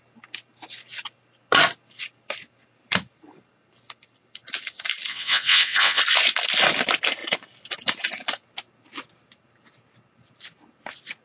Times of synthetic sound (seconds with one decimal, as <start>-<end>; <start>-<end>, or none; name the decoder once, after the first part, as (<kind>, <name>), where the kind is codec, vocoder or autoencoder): 5.1-6.0 (vocoder, WaveNeXt)